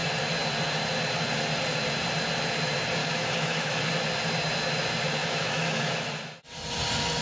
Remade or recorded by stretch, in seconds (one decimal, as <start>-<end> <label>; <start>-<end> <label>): 0.0-3.0 recorded; 3.0-3.8 remade; 3.8-5.2 recorded; 5.2-5.9 remade; 5.9-7.2 recorded